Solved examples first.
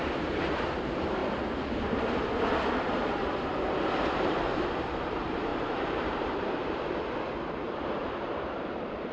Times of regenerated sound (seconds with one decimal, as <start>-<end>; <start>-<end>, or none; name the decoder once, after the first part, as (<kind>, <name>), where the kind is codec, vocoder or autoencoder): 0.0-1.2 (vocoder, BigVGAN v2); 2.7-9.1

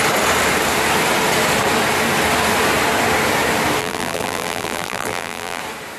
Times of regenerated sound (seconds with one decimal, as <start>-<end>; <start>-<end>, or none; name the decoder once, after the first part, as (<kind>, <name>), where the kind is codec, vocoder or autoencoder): 3.8-5.6 (vocoder, BigVGAN v2)

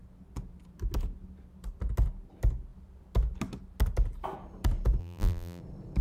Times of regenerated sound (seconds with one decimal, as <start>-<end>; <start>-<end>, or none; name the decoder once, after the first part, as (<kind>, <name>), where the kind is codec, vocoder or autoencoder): 5.0-5.6 (vocoder, BigVGAN v2)